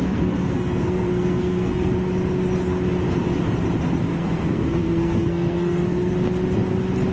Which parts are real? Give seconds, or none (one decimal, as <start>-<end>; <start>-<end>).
1.9-4.1; 6.1-7.1

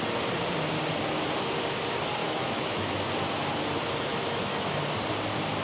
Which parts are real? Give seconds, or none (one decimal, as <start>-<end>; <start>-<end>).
0.0-2.2; 3.1-4.1; 4.8-5.6